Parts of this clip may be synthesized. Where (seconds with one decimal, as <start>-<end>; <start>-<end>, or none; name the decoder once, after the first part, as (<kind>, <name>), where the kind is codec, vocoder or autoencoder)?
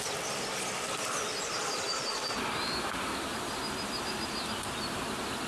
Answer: none